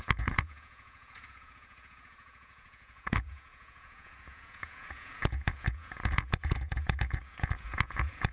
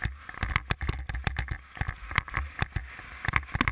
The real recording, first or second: second